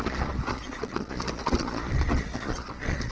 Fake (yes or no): yes